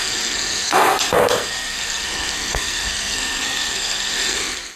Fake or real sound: fake